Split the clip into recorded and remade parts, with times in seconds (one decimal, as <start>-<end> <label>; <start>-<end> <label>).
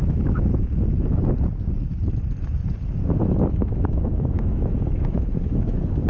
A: 0.0-0.5 remade; 0.5-3.4 recorded; 3.4-6.1 remade